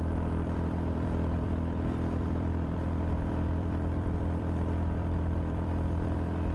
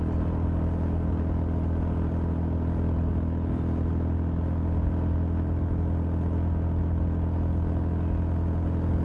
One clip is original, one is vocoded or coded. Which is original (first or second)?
second